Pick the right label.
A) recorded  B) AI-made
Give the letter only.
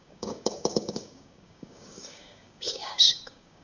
B